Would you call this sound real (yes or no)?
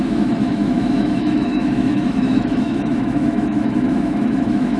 no